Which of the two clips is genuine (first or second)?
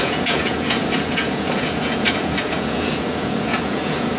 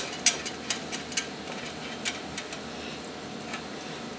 second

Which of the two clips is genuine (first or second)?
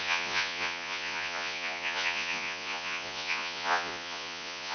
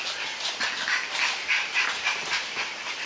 second